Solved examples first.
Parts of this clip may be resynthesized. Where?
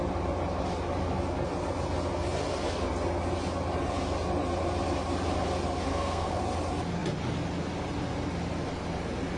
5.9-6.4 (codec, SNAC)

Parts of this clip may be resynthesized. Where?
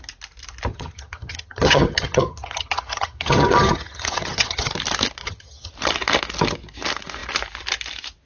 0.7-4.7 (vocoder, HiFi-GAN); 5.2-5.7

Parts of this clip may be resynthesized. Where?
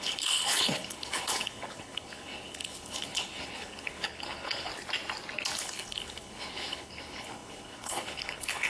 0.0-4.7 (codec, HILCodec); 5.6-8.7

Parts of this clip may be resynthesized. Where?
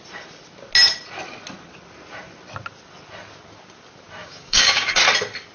4.2-5.0 (codec, DAC)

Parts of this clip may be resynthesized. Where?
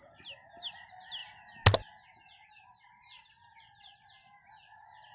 none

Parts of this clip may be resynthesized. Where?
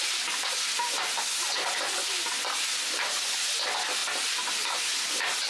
none